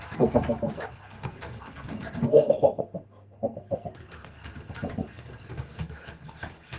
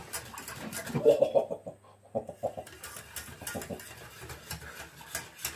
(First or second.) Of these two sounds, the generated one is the first